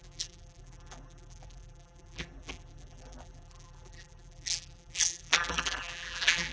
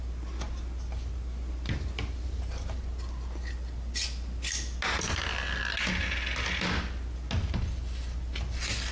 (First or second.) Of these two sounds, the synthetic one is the first